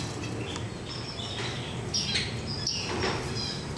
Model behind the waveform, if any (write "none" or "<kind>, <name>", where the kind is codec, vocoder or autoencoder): none